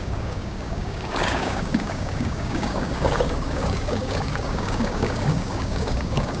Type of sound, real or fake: fake